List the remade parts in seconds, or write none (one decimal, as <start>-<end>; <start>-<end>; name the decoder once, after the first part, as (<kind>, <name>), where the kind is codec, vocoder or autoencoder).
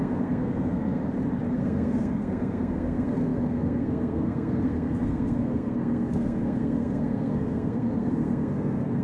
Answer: 0.0-1.0 (codec, SNAC); 1.5-9.0